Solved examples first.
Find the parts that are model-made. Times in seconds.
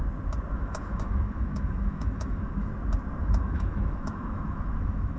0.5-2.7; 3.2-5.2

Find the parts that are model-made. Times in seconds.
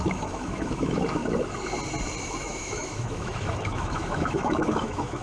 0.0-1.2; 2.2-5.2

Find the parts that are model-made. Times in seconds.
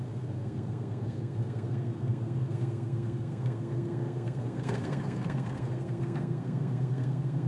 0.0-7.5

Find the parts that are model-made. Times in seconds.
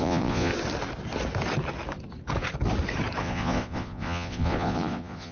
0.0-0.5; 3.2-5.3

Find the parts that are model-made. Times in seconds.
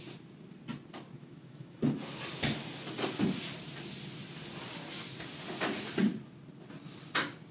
1.2-1.8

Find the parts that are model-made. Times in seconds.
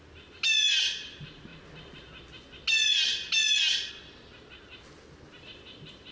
none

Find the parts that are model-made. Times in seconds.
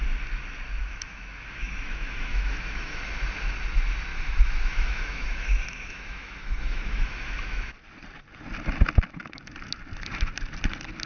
0.8-3.0; 4.1-7.6